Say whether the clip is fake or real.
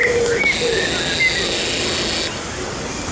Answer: real